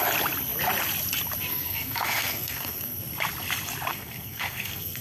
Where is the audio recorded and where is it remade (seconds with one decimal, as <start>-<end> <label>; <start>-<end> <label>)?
0.0-1.5 recorded; 1.5-3.0 remade; 3.0-3.9 recorded; 3.9-5.0 remade